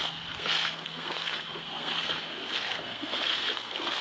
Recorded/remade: remade